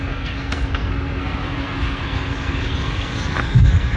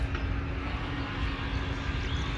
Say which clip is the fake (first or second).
first